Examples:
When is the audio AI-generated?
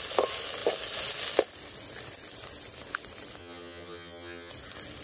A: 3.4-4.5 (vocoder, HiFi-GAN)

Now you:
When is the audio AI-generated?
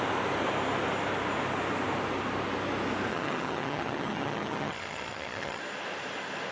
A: 3.1-5.6 (vocoder, HiFi-GAN)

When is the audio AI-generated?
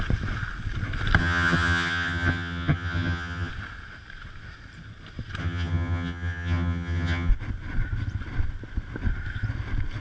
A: 1.2-3.5 (vocoder, HiFi-GAN); 5.4-7.3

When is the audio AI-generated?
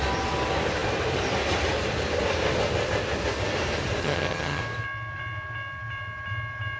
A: 4.0-4.6 (vocoder, HiFi-GAN)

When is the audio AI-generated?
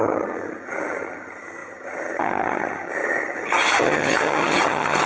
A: 0.0-5.1 (vocoder, HiFi-GAN)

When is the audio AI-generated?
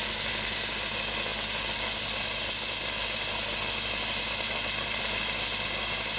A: none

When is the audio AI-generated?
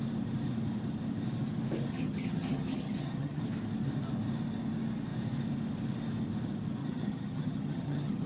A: 1.9-3.4 (vocoder, HiFi-GAN); 6.8-8.3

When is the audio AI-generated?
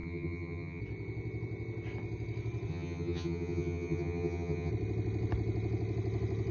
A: 0.0-0.8 (vocoder, HiFi-GAN); 2.7-4.7